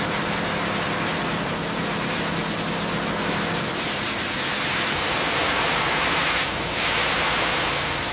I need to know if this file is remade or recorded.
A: recorded